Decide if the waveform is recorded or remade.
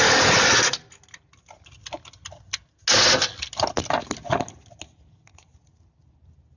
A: recorded